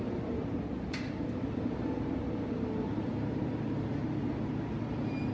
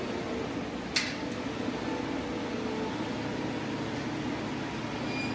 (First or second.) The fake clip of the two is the first